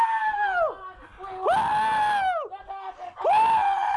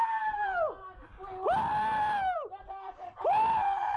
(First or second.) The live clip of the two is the first